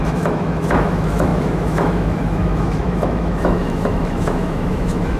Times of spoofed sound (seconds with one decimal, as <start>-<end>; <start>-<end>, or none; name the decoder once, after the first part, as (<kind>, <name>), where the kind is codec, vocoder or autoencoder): 0.0-5.2 (autoencoder, DAC-VAE)